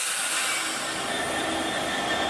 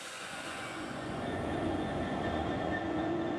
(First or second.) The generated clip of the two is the second